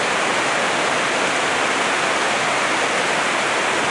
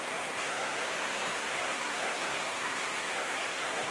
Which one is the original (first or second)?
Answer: first